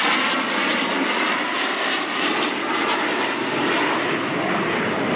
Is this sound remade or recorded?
recorded